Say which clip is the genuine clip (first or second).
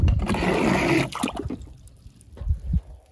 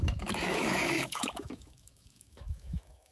first